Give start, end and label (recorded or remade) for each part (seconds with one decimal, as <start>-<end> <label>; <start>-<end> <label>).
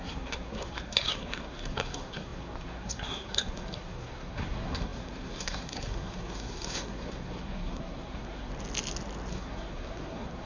0.0-8.5 remade; 8.5-9.3 recorded; 9.3-10.5 remade